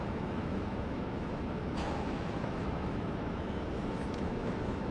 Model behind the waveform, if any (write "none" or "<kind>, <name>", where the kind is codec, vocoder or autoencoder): autoencoder, DAC-VAE